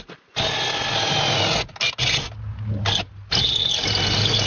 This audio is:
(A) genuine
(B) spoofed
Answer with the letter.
A